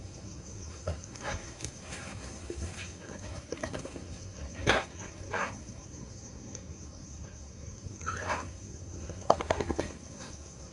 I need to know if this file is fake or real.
fake